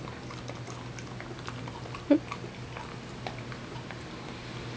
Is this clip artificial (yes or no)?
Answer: no